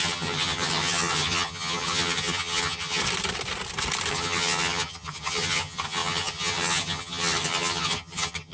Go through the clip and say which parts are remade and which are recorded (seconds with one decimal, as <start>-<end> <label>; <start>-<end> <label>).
0.0-3.0 remade; 3.0-4.1 recorded; 4.1-8.5 remade